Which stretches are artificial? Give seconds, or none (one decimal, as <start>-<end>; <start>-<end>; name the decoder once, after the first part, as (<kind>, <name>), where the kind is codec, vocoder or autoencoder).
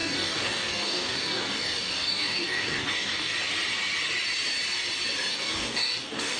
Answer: 0.0-3.3 (codec, DAC); 5.3-6.4